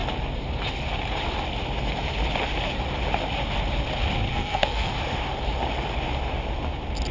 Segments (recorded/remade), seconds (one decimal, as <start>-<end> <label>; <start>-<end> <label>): 0.0-4.3 recorded; 4.3-4.9 remade; 4.9-7.1 recorded